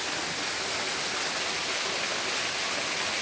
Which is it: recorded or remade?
recorded